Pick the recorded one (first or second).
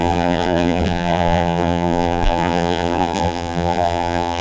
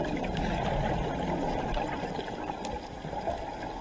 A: second